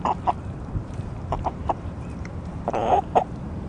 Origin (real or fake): fake